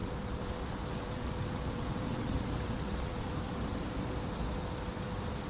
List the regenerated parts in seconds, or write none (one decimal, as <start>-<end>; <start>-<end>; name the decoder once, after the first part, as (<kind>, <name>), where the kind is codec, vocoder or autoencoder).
0.0-3.3 (vocoder, WaveNeXt)